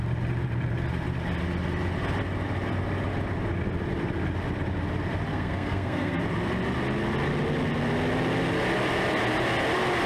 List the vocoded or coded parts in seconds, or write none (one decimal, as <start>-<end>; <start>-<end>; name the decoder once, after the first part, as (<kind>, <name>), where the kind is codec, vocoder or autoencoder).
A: 5.3-6.2 (codec, SNAC)